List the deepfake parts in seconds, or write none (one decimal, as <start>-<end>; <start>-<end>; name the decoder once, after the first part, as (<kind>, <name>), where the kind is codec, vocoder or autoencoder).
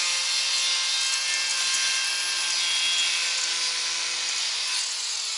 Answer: 1.5-2.1 (vocoder, Vocos); 4.4-5.4